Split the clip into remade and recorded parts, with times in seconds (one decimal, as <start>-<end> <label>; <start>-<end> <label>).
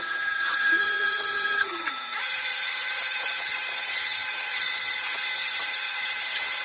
0.0-6.6 remade